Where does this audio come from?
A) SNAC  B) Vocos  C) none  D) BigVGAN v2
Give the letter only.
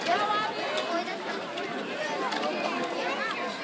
C